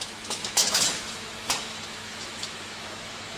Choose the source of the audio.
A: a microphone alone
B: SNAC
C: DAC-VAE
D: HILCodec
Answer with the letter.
C